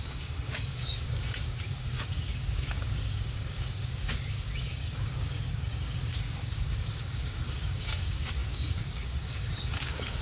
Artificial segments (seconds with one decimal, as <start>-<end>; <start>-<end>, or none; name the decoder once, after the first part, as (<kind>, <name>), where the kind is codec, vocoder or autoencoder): 0.0-10.2 (codec, DAC)